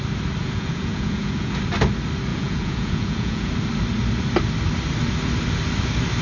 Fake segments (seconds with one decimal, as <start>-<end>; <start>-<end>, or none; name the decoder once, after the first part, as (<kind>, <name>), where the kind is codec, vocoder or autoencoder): 0.4-1.6 (vocoder, Vocos); 2.3-3.5